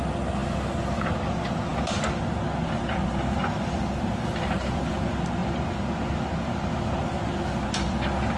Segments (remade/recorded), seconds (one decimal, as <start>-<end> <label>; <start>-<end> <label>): 0.0-8.4 recorded